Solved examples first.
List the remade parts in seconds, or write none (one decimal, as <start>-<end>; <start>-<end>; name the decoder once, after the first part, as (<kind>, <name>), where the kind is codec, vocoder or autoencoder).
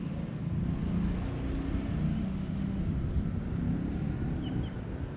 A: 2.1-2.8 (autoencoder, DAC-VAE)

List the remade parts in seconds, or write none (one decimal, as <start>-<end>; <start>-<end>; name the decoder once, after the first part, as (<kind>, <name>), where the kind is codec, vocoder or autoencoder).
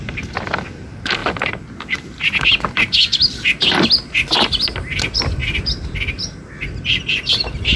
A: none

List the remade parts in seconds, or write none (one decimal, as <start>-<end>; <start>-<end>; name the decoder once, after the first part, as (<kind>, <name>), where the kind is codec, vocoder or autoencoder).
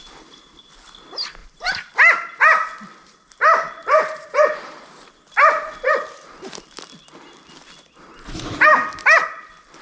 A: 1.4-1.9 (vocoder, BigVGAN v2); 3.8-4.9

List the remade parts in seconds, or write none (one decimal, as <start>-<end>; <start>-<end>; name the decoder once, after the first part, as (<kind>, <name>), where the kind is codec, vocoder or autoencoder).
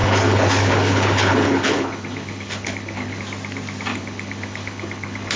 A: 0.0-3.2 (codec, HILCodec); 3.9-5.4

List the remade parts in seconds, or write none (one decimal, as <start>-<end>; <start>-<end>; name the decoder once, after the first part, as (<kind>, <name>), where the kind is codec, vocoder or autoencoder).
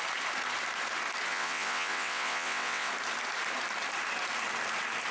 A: 1.3-2.9 (vocoder, WaveNeXt)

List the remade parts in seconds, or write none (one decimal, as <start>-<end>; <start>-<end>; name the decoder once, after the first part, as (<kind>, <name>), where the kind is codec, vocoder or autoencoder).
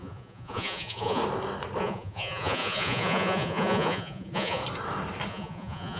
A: 0.0-1.2 (vocoder, Vocos); 1.8-4.6; 5.3-6.0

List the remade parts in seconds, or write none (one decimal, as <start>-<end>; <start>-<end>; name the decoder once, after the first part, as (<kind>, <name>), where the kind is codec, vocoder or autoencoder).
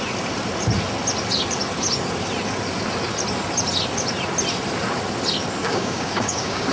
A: 5.6-6.7 (codec, DAC)